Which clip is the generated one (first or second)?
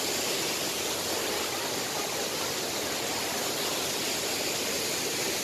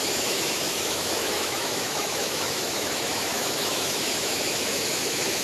second